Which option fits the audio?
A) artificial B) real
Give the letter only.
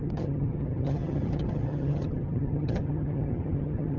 A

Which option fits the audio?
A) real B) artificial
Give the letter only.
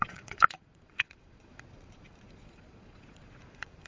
B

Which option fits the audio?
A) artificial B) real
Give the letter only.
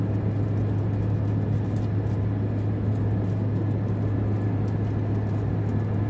B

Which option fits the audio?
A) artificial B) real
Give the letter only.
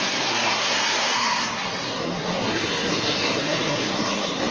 A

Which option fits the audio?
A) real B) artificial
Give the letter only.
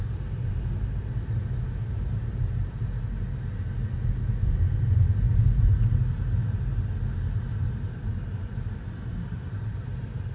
A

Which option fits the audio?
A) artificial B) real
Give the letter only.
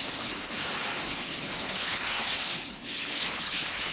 A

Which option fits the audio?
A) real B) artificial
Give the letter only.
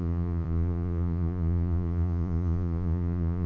B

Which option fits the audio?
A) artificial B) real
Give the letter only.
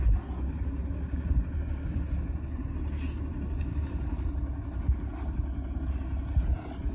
B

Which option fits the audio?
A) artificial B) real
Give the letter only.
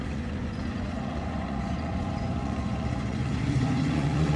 A